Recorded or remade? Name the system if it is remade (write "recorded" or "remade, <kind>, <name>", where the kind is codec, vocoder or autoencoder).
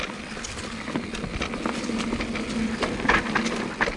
recorded